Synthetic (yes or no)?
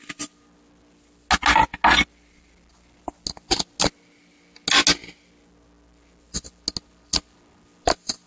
no